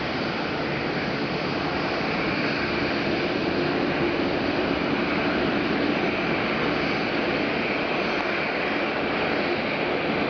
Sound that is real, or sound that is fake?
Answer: real